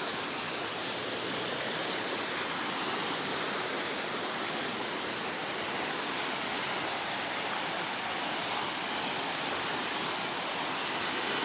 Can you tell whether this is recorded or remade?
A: recorded